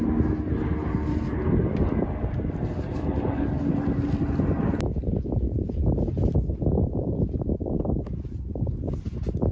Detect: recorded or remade recorded